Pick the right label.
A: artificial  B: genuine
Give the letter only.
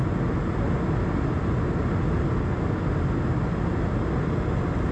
B